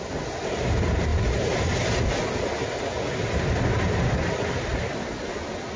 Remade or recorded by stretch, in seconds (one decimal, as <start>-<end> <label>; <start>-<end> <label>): 0.0-1.1 remade; 1.1-4.2 recorded; 4.2-4.7 remade; 4.7-5.8 recorded